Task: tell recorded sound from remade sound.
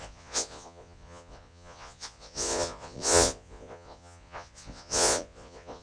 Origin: remade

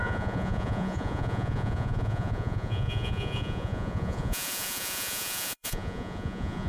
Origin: remade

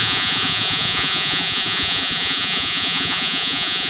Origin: remade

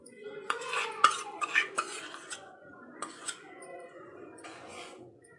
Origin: remade